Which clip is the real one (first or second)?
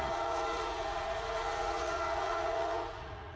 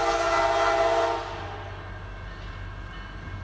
second